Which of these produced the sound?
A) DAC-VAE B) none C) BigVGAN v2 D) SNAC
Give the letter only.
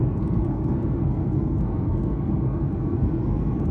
D